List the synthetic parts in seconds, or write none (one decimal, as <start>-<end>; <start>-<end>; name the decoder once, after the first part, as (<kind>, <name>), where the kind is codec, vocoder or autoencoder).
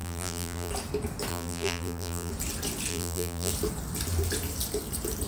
0.0-0.7 (vocoder, BigVGAN v2); 1.3-2.3; 2.9-3.5